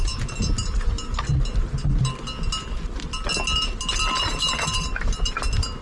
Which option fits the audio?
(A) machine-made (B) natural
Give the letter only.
B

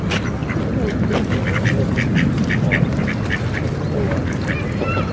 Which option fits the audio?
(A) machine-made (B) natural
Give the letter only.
B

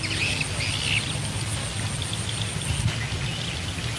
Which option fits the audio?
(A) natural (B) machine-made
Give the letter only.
A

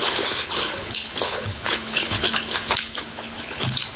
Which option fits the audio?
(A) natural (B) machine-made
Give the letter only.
B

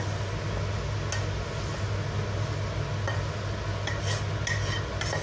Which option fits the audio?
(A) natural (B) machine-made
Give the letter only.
A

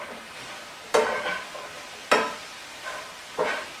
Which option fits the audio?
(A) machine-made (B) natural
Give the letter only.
B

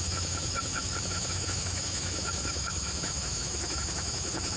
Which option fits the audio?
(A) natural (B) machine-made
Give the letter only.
B